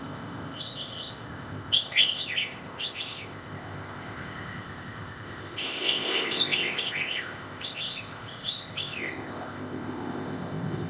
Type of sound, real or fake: fake